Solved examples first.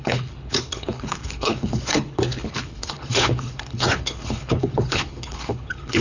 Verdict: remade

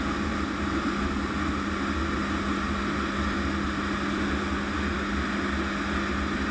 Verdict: recorded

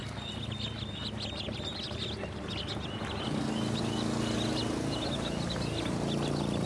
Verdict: recorded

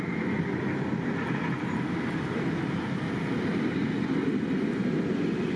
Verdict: recorded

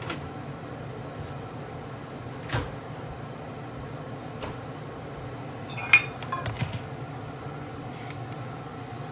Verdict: recorded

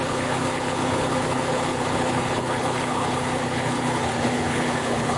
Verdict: remade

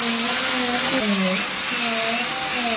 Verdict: recorded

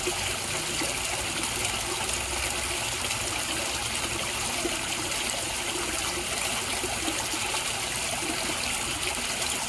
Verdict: recorded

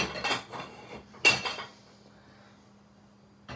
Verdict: recorded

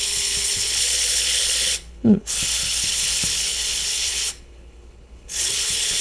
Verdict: remade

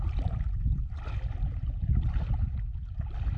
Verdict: recorded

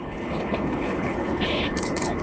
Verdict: remade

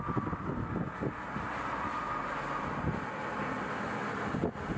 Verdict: recorded